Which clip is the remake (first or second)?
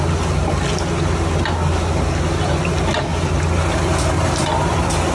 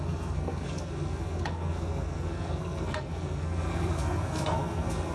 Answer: second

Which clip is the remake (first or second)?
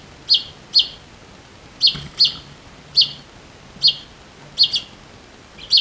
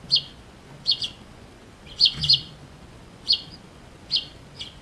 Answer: second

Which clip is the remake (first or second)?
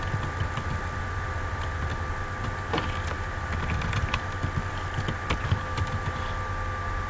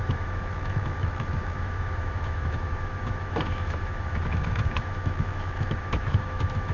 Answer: second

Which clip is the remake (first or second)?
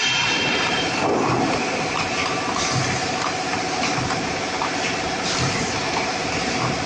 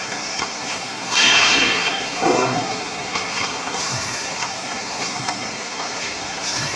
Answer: second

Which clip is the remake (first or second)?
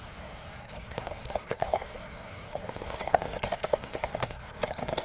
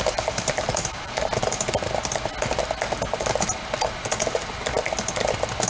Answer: first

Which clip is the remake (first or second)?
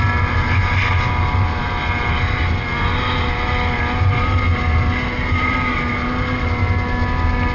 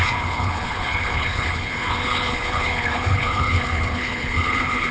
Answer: second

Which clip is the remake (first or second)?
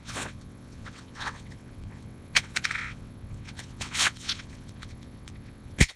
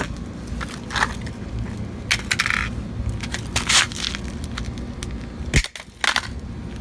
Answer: first